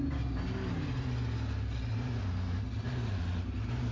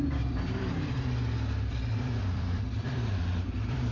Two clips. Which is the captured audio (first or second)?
first